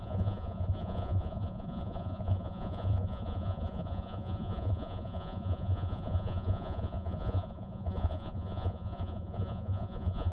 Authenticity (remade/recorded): remade